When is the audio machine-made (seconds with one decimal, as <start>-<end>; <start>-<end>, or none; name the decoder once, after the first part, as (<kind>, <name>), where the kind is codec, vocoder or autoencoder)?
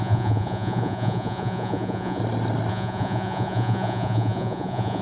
0.0-2.2 (vocoder, Vocos); 2.7-5.0